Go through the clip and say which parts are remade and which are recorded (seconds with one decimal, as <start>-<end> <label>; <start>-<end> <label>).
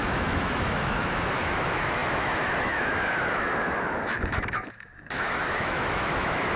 0.0-6.6 remade